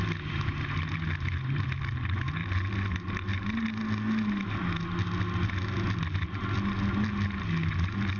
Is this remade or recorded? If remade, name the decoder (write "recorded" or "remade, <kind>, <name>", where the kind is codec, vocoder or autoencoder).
recorded